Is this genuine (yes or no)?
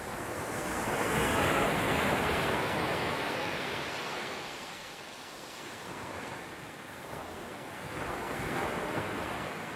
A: no